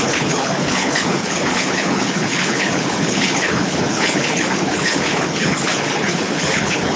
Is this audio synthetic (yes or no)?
yes